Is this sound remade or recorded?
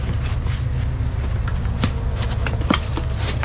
recorded